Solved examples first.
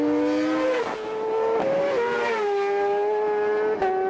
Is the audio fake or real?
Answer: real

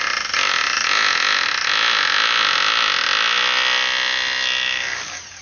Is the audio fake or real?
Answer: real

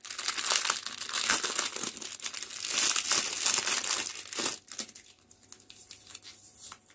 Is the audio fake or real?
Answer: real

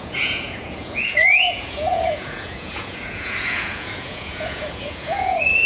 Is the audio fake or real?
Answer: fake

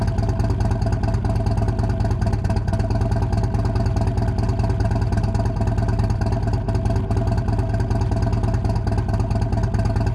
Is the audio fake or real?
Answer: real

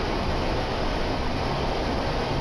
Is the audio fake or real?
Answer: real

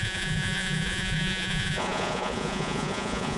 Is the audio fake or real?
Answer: fake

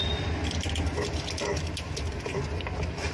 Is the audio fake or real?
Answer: real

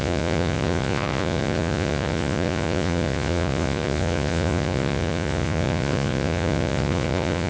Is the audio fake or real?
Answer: fake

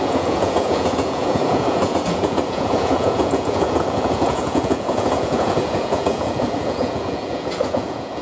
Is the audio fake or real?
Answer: fake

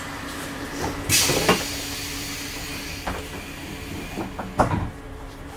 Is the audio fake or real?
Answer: real